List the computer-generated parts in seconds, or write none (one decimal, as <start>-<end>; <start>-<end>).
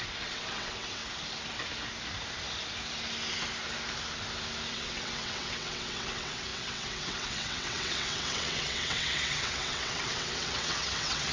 0.0-1.0; 4.7-11.3